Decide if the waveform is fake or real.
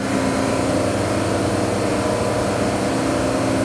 real